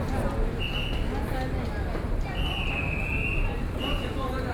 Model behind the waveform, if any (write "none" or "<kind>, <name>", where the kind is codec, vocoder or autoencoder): none